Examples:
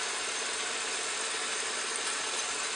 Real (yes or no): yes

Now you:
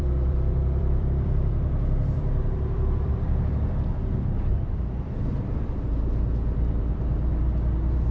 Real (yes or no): no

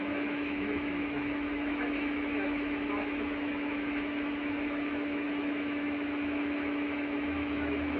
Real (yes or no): no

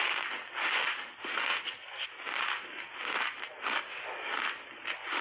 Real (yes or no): yes